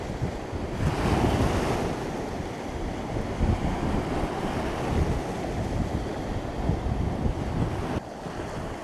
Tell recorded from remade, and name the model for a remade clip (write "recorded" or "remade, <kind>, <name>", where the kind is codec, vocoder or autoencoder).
recorded